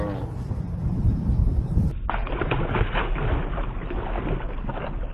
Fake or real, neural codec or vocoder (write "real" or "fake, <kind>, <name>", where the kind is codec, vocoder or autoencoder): real